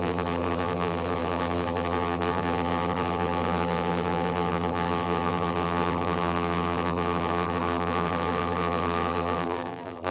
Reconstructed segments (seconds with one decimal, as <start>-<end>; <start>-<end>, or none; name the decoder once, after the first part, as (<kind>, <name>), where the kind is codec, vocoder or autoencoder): 0.0-10.1 (vocoder, BigVGAN v2)